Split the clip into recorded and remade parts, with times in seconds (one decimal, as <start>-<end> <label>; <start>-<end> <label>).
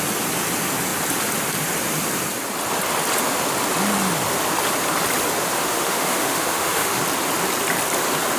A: 0.0-5.7 recorded; 5.7-7.0 remade; 7.0-8.4 recorded